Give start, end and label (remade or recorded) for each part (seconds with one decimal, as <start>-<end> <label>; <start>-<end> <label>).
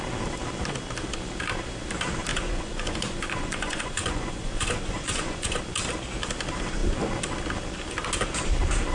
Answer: 0.0-2.3 recorded; 2.3-5.6 remade; 5.6-8.9 recorded